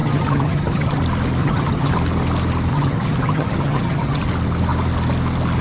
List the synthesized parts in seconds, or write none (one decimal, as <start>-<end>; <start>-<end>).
0.0-1.0; 1.4-1.9; 2.7-4.2